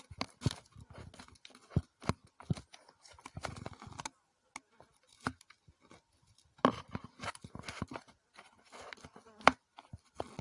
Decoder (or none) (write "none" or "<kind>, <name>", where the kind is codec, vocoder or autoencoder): none